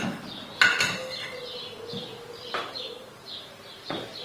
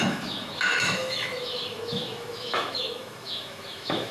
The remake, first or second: second